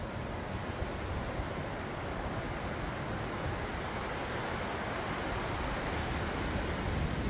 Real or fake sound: real